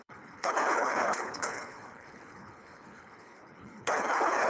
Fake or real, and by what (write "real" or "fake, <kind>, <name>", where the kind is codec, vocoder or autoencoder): fake, codec, HILCodec